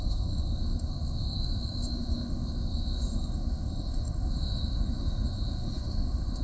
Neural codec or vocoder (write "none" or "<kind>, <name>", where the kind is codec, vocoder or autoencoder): autoencoder, DAC-VAE